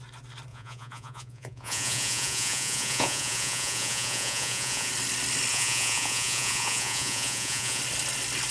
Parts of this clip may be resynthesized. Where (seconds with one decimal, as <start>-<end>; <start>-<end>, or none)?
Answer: 0.5-4.9; 5.5-7.8